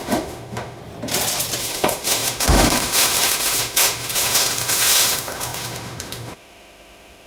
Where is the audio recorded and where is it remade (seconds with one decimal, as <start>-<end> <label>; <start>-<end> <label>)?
0.0-0.8 remade; 0.8-1.6 recorded; 1.6-7.3 remade